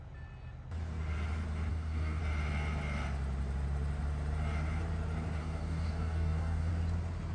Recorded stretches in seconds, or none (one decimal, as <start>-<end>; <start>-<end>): 0.0-1.7; 2.2-5.4; 6.7-7.3